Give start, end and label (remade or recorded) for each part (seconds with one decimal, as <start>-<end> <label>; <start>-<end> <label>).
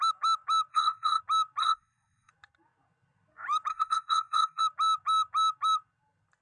0.0-0.7 recorded; 0.7-1.2 remade; 1.2-1.6 recorded; 1.6-2.3 remade; 2.3-3.7 recorded; 3.7-4.6 remade; 4.6-6.4 recorded